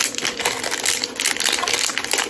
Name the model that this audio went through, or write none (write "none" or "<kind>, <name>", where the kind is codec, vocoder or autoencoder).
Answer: none